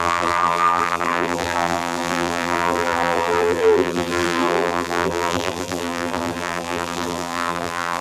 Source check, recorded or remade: remade